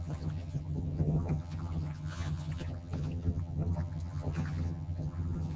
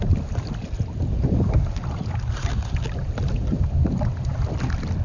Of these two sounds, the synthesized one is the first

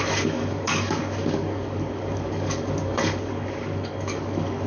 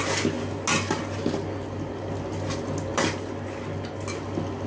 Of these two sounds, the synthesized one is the first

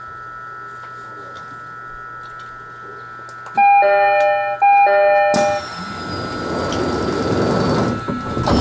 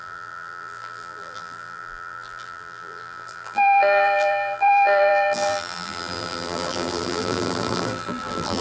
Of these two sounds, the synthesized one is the second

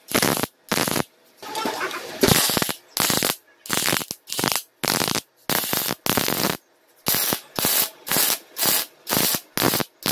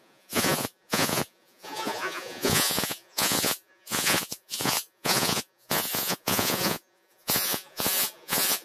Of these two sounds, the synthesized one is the second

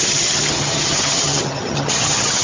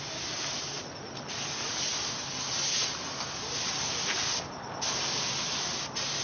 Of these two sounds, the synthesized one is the first